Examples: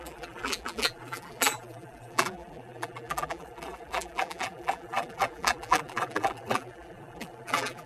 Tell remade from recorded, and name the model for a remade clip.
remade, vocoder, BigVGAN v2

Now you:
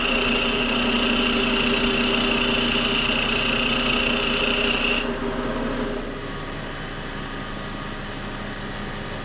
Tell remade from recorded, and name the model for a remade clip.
recorded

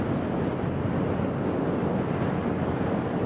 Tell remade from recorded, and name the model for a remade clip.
recorded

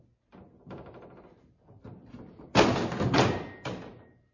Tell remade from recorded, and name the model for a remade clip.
recorded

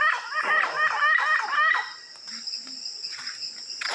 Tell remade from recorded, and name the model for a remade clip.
recorded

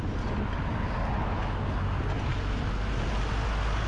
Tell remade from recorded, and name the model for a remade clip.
recorded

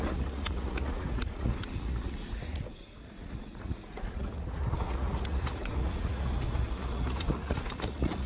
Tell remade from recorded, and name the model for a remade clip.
remade, vocoder, Vocos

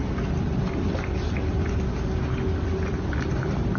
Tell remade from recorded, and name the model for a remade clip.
recorded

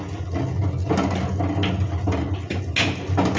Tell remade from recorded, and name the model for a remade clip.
recorded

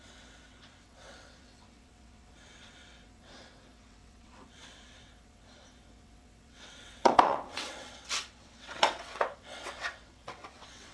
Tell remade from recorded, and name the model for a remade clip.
remade, vocoder, WaveNeXt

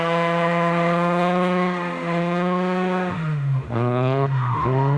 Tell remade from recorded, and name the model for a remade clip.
remade, autoencoder, DAC-VAE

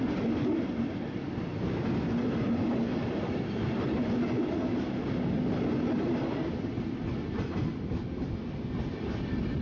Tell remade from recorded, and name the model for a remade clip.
recorded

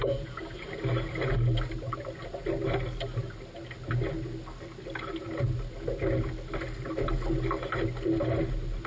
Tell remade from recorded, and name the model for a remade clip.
recorded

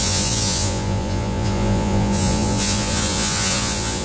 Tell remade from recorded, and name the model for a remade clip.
remade, vocoder, Vocos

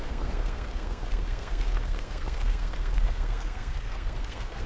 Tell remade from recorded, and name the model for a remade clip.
remade, codec, SNAC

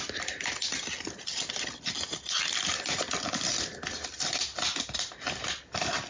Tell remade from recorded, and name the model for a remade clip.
recorded